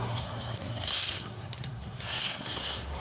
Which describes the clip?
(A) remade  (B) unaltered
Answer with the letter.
A